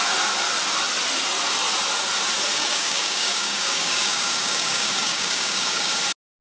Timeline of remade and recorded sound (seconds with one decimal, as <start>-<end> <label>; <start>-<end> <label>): 0.0-2.5 recorded; 2.5-6.0 remade; 6.0-6.4 recorded

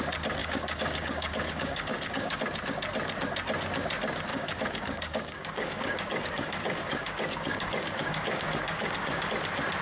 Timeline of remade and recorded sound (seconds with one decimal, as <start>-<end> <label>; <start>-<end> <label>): 0.0-0.4 recorded; 0.4-2.4 remade; 2.4-4.3 recorded; 4.3-9.3 remade; 9.3-9.8 recorded

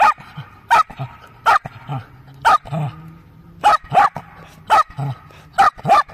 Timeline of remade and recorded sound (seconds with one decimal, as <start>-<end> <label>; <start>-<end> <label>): 0.0-6.1 recorded

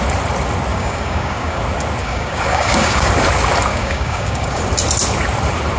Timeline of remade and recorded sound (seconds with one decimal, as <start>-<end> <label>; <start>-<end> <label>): 0.0-0.7 recorded; 0.7-1.6 remade; 1.6-2.0 recorded; 2.0-3.1 remade; 3.1-3.7 recorded; 3.7-4.6 remade; 4.6-5.8 recorded

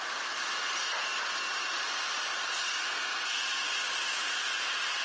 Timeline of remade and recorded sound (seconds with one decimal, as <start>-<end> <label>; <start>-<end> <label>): 0.0-5.0 recorded

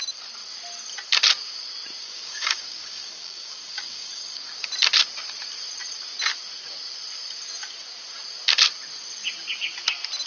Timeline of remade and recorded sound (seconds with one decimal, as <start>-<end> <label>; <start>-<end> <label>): 0.0-2.0 recorded; 2.0-4.7 remade; 4.7-10.3 recorded